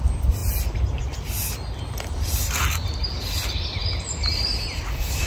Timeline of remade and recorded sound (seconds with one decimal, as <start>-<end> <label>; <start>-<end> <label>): 0.0-3.8 recorded; 3.8-4.8 remade; 4.8-5.3 recorded